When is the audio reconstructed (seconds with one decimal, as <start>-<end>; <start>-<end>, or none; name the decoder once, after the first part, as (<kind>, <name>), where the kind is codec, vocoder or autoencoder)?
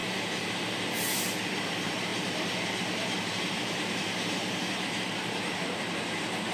0.0-6.5 (vocoder, BigVGAN v2)